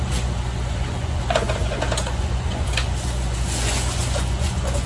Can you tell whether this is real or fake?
fake